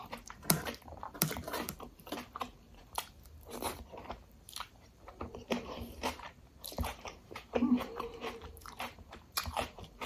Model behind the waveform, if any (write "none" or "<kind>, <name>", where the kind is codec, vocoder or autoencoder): vocoder, BigVGAN v2